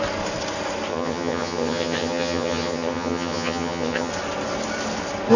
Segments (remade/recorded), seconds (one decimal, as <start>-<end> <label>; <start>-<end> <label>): 0.0-0.9 recorded; 0.9-4.1 remade; 4.1-5.4 recorded